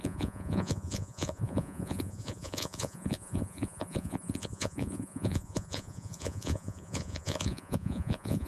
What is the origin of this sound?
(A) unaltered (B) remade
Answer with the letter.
B